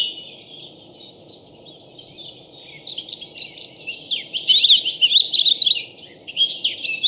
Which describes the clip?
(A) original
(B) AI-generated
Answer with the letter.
A